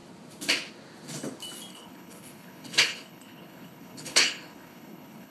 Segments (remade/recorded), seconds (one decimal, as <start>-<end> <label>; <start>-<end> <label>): 0.0-1.7 recorded; 1.7-5.3 remade